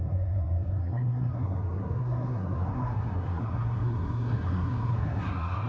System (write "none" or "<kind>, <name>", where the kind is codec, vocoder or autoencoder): codec, SNAC